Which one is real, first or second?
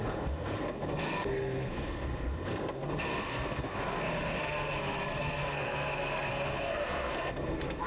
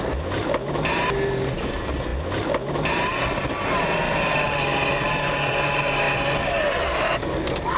second